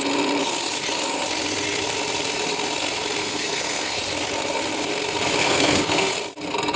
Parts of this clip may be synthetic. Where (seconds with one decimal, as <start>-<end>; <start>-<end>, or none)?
3.2-4.0; 5.4-6.1